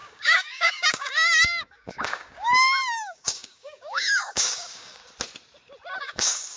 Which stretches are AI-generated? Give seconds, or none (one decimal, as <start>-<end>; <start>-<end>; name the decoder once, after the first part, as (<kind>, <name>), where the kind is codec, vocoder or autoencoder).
0.0-5.0 (codec, DAC); 6.0-6.6